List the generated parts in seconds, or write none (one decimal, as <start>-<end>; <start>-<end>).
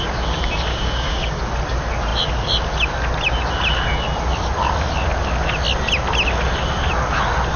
0.7-1.4